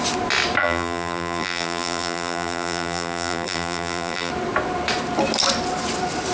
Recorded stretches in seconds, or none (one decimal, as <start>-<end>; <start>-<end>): 0.0-0.6; 4.3-6.3